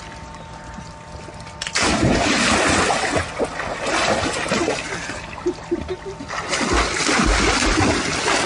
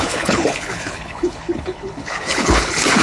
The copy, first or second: second